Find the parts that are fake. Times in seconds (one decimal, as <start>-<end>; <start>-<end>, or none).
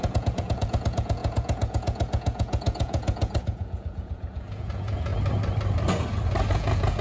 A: 0.0-5.1; 6.5-7.0